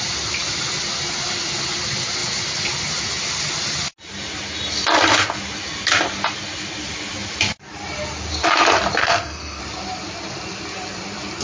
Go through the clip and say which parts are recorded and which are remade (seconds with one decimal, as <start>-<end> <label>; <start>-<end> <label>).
0.0-9.0 recorded; 9.0-9.6 remade; 9.6-11.4 recorded